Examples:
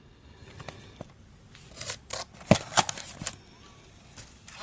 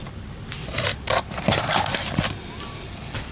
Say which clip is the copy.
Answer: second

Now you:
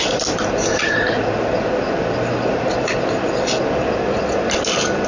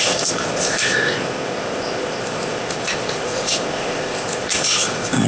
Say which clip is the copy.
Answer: second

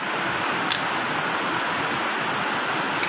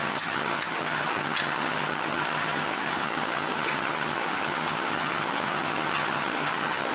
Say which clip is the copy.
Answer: second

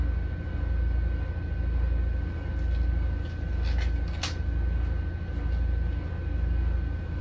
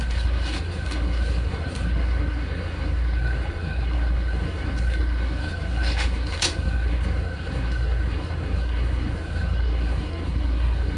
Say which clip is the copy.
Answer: second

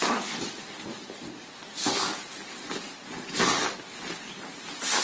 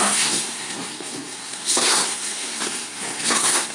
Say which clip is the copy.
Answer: second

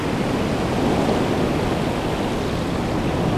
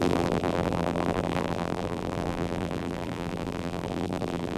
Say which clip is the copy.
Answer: second